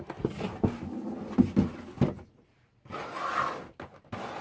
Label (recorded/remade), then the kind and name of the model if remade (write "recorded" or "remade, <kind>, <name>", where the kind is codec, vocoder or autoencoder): recorded